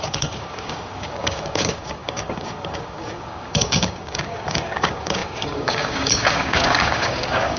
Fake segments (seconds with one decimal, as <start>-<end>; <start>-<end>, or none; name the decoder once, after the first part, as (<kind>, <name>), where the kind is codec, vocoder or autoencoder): 0.0-7.6 (codec, DAC)